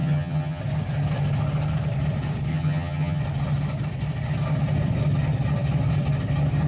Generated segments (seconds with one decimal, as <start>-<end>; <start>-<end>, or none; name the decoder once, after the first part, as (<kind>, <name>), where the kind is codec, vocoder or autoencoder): 0.0-0.6 (vocoder, HiFi-GAN); 2.5-3.2